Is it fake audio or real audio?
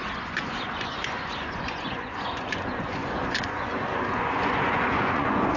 fake